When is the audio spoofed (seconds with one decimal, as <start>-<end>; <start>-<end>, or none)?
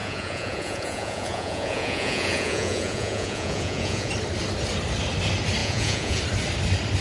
0.0-4.1; 5.6-6.2